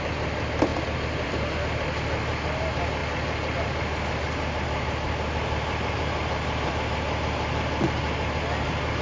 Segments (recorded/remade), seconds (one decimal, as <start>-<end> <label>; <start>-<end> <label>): 0.0-0.7 recorded; 0.7-1.5 remade; 1.5-9.0 recorded